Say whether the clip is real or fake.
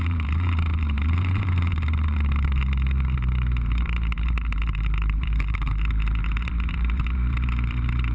fake